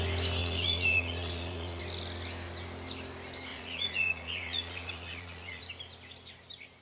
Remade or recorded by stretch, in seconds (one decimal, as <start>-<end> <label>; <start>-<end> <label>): 0.0-0.4 recorded; 0.4-1.8 remade; 1.8-3.5 recorded; 3.5-5.6 remade; 5.6-6.8 recorded